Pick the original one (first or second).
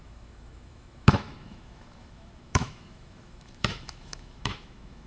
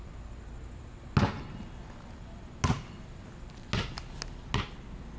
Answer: second